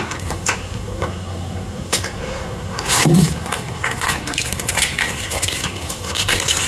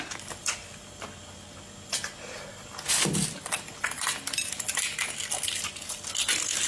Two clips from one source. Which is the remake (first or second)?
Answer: first